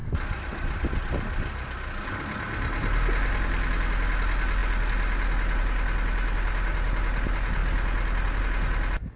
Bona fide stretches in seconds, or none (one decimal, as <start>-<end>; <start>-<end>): 0.0-9.2